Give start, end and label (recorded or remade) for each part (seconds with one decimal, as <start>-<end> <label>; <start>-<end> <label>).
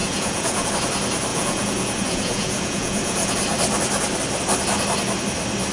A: 0.0-0.7 remade; 0.7-1.3 recorded; 1.3-3.3 remade; 3.3-5.7 recorded